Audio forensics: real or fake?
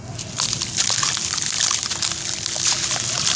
real